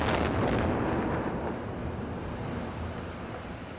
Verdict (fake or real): real